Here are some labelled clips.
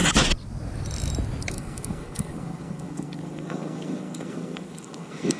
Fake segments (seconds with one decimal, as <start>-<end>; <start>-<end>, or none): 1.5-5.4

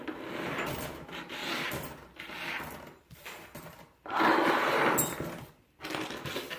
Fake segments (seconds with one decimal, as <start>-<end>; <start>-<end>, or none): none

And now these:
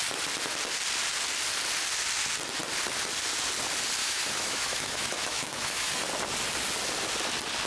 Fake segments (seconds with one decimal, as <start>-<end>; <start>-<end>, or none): 4.0-5.9

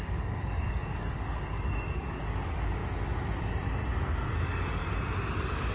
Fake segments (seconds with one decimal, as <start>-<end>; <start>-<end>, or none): 0.0-2.8; 4.0-4.8; 5.3-5.7